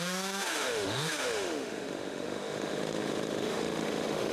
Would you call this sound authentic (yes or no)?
no